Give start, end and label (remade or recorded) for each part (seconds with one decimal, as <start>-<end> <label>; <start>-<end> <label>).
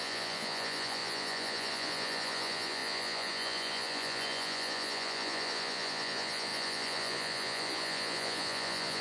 0.0-9.0 remade